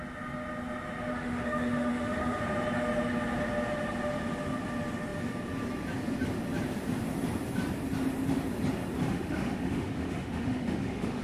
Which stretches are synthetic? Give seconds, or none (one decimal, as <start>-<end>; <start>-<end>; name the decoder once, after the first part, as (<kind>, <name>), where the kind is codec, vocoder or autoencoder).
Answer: 1.1-2.4 (autoencoder, DAC-VAE); 9.0-11.2